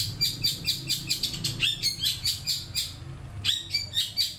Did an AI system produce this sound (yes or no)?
no